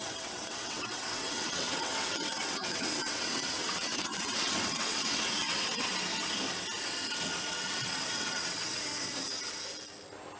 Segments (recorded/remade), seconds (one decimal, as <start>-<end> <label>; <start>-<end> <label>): 0.0-5.9 remade; 5.9-7.5 recorded; 7.5-8.9 remade; 8.9-10.4 recorded